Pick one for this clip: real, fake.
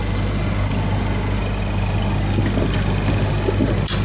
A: real